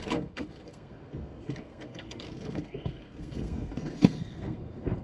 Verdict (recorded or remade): remade